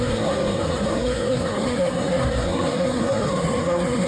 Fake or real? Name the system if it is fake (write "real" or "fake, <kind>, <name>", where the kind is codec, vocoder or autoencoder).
fake, codec, SNAC